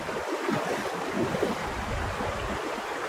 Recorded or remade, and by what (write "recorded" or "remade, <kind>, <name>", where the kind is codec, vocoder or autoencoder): remade, vocoder, BigVGAN v2